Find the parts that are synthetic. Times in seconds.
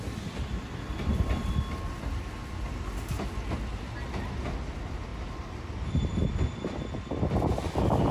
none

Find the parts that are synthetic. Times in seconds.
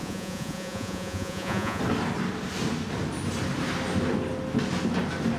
0.0-1.8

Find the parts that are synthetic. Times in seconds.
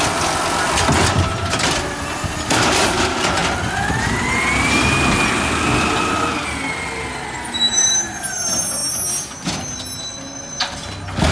none